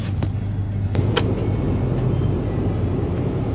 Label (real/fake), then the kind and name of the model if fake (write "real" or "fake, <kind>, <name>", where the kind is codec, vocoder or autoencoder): real